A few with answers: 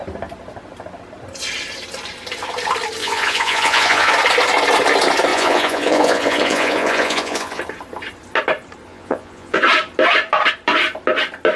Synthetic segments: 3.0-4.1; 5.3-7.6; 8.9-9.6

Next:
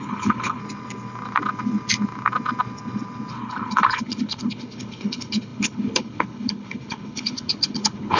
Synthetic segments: 0.0-0.6; 3.3-8.2

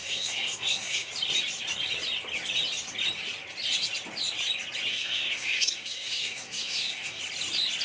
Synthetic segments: 0.0-1.1; 4.9-7.2

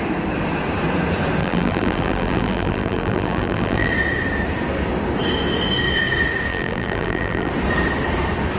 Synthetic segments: 1.4-3.9; 6.5-7.5

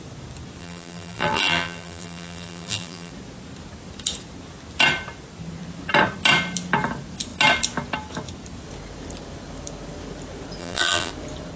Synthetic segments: 0.6-3.1; 10.6-11.1

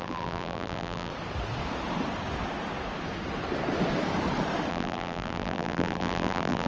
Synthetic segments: 0.0-1.1; 4.7-6.7

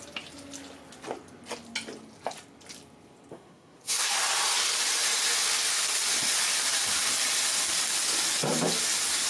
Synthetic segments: 3.3-4.1

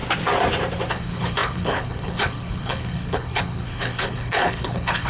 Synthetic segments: 0.9-5.1